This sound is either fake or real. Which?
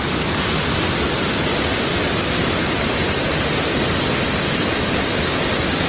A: real